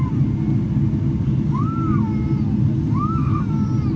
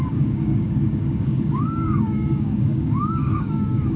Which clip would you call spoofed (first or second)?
second